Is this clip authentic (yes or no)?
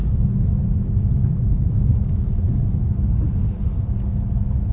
yes